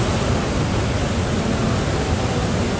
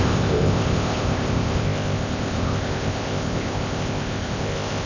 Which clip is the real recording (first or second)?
first